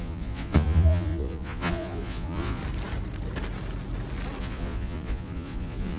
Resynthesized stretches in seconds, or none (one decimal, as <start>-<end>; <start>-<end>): 0.0-2.6; 4.4-6.0